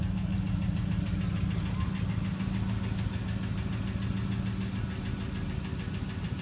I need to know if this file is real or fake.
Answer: real